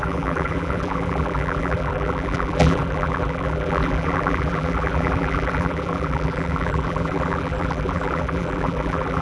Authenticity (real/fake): fake